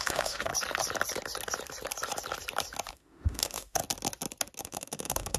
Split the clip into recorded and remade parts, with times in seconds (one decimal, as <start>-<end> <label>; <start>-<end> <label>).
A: 0.0-0.5 remade; 0.5-2.9 recorded; 2.9-3.8 remade; 3.8-4.6 recorded; 4.6-5.4 remade